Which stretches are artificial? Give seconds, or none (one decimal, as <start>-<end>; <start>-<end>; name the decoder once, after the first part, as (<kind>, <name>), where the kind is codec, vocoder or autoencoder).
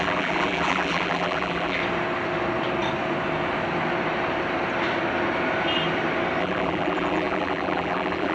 0.0-1.8 (vocoder, BigVGAN v2); 6.4-8.3